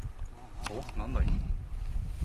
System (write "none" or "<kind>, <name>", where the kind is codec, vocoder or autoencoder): none